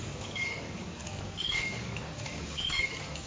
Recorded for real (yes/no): no